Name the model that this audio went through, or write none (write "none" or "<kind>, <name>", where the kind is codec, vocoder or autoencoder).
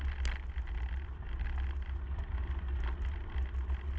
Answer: none